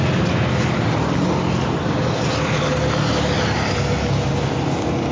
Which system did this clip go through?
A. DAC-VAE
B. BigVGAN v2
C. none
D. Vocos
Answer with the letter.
C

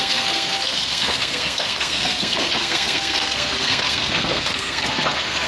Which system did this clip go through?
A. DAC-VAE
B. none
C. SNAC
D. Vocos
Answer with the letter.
C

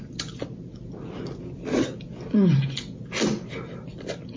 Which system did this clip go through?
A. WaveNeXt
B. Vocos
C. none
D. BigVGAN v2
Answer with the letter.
C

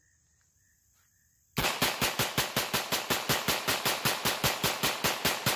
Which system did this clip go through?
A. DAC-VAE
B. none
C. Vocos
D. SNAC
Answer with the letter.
B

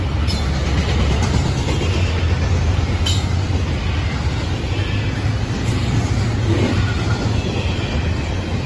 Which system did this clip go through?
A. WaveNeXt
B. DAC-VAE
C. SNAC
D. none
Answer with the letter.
D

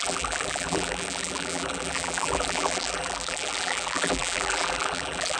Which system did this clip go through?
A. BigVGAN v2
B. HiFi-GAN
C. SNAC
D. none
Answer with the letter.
A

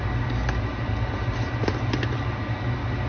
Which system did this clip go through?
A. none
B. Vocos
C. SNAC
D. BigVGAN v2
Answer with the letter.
A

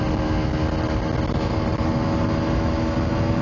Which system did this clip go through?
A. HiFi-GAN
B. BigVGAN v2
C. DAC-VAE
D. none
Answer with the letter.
D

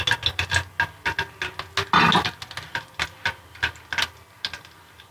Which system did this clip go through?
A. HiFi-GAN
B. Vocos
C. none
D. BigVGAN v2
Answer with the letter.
C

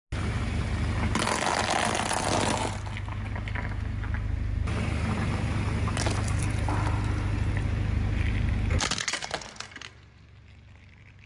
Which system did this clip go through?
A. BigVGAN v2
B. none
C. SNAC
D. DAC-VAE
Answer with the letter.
B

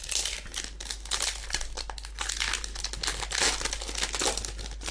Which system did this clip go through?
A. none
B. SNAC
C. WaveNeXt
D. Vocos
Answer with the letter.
A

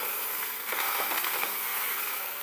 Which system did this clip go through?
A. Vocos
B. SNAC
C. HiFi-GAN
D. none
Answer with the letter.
B